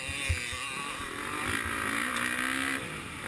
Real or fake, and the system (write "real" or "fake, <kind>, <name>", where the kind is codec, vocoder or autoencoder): real